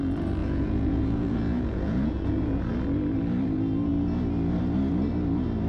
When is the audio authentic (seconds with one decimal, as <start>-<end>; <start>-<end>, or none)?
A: 0.0-0.4; 2.6-5.7